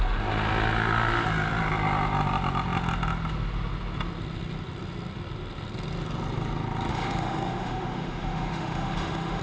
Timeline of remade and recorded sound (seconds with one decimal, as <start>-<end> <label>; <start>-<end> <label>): 0.0-6.9 recorded; 6.9-9.4 remade